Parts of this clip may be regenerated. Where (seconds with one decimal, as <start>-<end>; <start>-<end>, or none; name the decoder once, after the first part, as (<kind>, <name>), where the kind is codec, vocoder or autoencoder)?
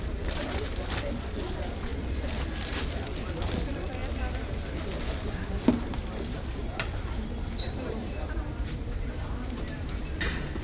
0.0-4.0 (vocoder, BigVGAN v2); 5.3-10.6